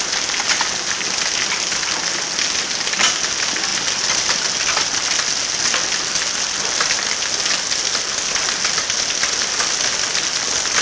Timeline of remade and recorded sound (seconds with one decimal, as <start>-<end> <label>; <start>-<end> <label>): 0.0-10.8 recorded